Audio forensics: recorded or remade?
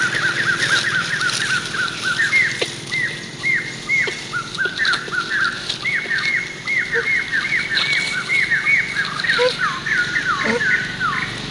recorded